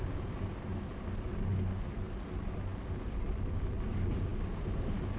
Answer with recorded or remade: recorded